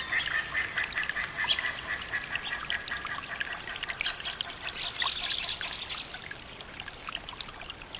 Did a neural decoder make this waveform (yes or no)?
no